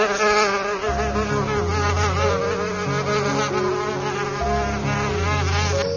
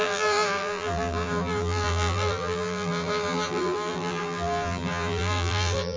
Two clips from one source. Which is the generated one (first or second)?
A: second